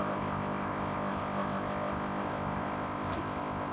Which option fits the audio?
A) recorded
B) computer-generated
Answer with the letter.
B